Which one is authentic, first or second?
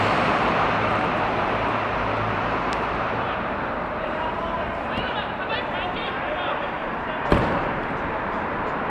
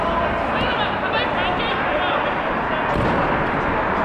second